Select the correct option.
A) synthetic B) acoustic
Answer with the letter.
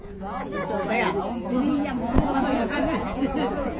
A